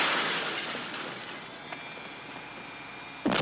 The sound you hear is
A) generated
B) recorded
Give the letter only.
B